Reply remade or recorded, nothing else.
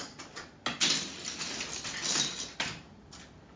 recorded